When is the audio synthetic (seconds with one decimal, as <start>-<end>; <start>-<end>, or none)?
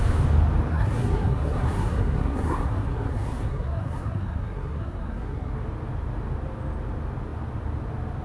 0.7-5.5